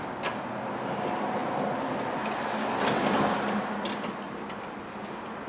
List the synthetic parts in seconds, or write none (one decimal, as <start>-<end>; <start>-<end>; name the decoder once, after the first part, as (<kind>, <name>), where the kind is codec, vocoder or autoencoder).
none